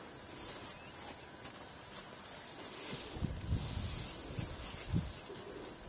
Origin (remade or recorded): recorded